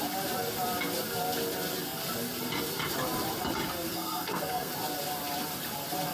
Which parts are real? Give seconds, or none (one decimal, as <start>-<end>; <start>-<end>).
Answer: 0.0-3.9; 4.7-6.1